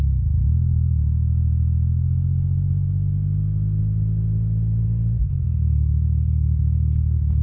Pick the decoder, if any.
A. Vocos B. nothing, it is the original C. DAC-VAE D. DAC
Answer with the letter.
B